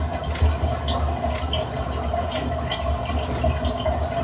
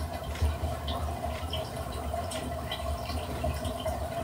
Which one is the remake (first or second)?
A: second